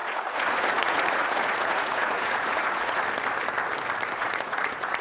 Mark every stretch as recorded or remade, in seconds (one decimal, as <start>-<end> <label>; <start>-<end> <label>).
0.0-3.0 remade; 3.0-4.2 recorded; 4.2-5.0 remade